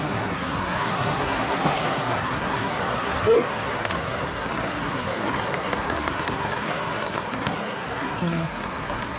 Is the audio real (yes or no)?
no